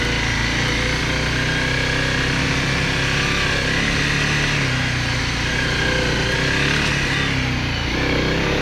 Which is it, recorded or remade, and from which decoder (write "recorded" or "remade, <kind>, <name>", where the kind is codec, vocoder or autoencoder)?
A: recorded